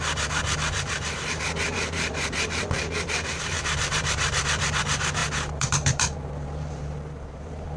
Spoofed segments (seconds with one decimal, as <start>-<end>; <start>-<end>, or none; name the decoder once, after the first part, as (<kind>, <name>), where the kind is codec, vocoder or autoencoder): 0.0-7.8 (vocoder, BigVGAN v2)